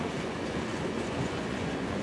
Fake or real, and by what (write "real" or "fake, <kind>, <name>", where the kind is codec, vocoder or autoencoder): fake, vocoder, Vocos